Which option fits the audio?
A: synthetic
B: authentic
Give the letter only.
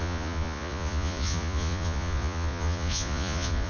A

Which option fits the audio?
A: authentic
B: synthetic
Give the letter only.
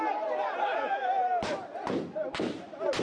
A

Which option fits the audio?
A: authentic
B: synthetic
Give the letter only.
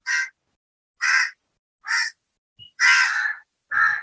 A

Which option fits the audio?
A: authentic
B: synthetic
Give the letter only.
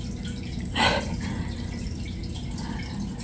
A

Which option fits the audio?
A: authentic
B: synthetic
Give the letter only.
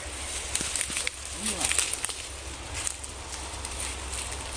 A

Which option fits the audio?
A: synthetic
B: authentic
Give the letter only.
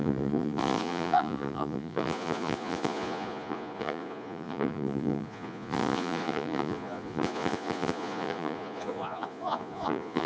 A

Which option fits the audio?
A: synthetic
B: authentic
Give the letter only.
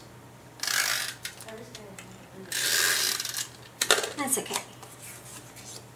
B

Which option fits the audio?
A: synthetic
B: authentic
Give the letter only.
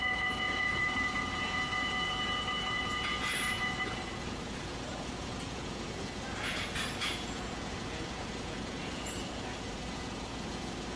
A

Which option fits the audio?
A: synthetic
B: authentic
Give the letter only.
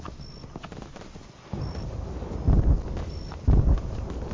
B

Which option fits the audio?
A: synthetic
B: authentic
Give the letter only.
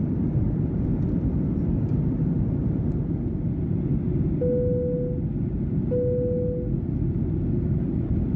B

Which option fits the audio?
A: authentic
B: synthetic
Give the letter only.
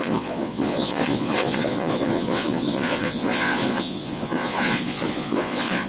B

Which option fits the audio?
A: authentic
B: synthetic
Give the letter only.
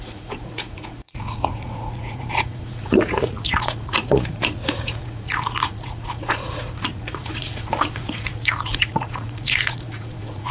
B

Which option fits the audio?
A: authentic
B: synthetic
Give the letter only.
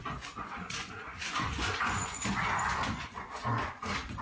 B